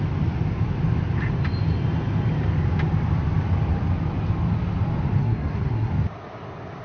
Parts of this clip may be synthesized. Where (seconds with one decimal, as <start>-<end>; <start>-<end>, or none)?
5.2-5.9